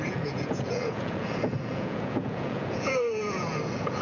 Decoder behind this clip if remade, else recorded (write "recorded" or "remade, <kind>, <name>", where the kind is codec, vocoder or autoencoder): remade, vocoder, Vocos